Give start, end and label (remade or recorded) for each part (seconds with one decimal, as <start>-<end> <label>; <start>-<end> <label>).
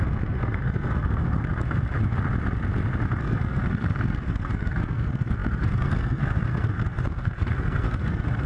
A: 0.0-1.5 remade; 1.5-3.2 recorded; 3.2-8.5 remade